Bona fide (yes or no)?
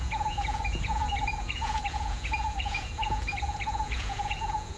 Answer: no